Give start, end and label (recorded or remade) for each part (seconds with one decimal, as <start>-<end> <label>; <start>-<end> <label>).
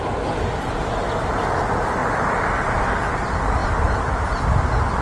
0.0-5.0 recorded